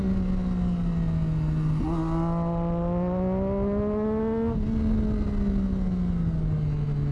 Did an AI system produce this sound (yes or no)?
no